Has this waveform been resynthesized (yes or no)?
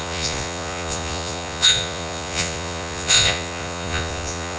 yes